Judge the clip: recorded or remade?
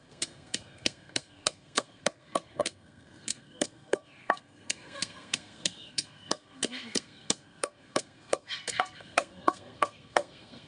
remade